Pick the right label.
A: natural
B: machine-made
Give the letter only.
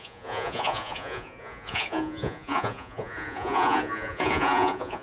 B